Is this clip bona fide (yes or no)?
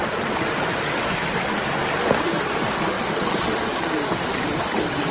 yes